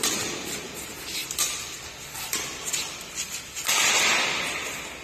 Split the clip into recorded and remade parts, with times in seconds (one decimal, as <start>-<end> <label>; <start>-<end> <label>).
0.0-1.2 recorded; 1.2-4.2 remade; 4.2-5.0 recorded